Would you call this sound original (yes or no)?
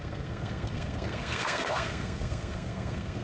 no